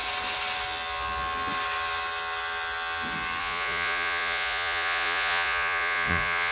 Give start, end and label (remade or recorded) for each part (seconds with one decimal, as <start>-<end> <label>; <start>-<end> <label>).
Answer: 0.0-3.4 recorded; 3.4-6.5 remade